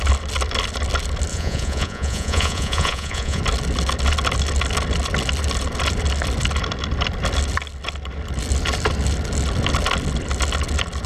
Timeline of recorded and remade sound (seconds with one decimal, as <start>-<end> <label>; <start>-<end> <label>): 0.0-1.3 recorded; 1.3-3.4 remade; 3.4-11.1 recorded